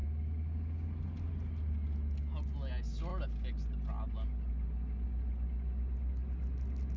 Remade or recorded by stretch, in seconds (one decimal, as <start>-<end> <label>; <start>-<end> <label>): 0.0-7.0 recorded